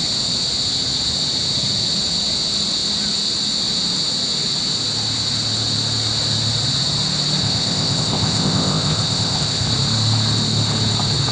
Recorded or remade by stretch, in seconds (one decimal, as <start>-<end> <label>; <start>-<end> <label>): 0.0-7.4 recorded; 7.4-9.7 remade; 9.7-11.3 recorded